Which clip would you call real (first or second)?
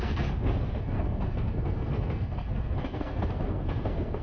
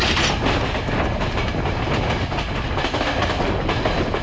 second